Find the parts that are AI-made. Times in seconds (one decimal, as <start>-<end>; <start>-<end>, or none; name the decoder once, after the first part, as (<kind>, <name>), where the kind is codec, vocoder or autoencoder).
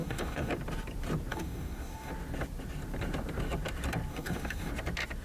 0.0-0.5 (codec, DAC); 1.3-2.1; 4.1-4.7